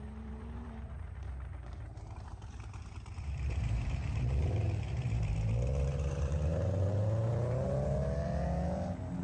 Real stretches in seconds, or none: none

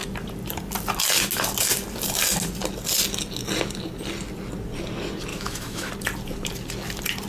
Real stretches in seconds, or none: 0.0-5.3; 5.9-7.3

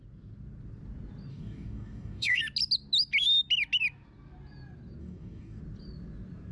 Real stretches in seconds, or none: 0.0-1.3; 2.4-5.0; 5.6-6.5

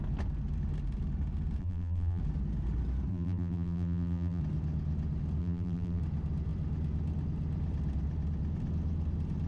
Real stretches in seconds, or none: 0.0-1.6; 2.2-3.1; 4.4-5.4; 6.0-9.5